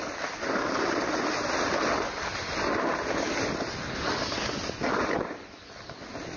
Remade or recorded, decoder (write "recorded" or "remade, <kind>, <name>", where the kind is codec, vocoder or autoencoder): recorded